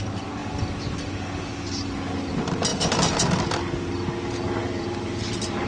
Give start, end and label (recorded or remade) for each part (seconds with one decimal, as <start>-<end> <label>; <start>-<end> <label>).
0.0-0.4 remade; 0.4-2.3 recorded; 2.3-2.7 remade; 2.7-4.6 recorded; 4.6-5.7 remade